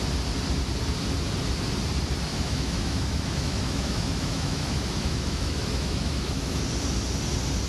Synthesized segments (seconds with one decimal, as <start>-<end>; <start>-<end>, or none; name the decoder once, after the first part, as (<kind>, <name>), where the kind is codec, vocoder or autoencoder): 2.3-6.6 (autoencoder, DAC-VAE)